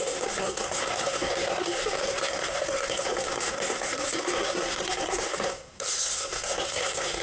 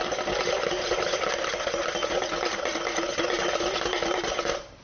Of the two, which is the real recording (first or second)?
second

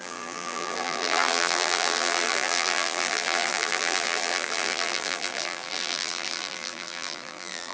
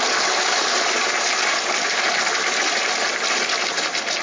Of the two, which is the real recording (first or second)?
second